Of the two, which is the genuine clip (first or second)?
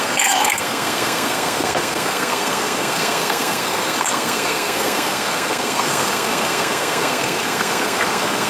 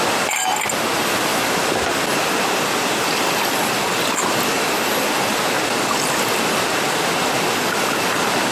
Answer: second